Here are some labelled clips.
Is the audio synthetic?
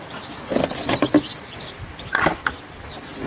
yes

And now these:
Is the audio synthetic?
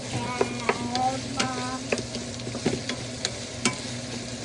no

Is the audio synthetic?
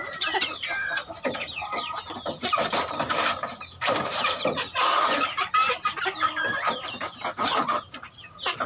yes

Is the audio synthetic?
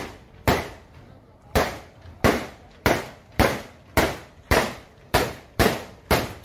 yes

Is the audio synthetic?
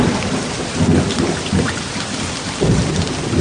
no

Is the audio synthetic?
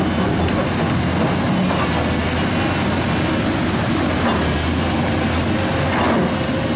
no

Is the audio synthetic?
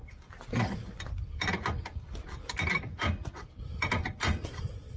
yes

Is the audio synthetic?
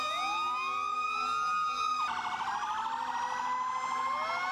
no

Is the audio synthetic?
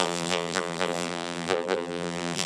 yes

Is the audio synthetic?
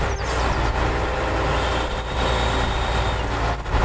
no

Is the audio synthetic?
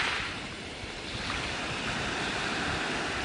no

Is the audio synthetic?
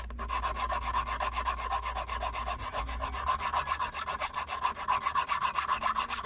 no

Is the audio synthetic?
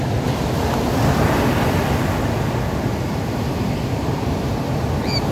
no